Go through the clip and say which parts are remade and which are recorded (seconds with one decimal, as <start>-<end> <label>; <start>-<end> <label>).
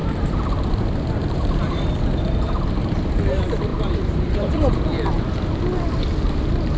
0.0-1.9 remade; 1.9-3.7 recorded; 3.7-4.5 remade; 4.5-6.8 recorded